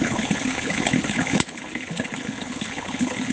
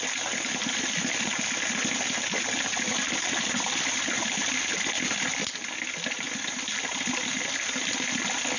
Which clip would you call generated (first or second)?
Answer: first